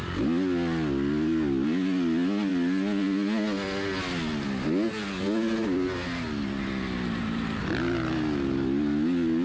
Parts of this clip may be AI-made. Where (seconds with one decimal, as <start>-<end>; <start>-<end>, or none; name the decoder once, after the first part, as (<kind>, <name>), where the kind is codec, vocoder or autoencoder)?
none